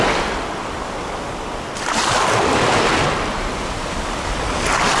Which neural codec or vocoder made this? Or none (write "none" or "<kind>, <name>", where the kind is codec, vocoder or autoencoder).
none